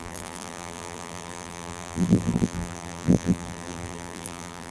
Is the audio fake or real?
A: fake